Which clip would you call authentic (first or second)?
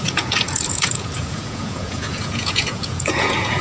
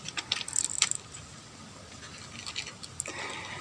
second